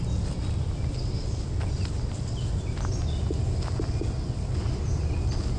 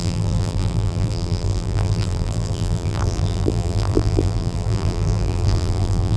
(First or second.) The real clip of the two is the first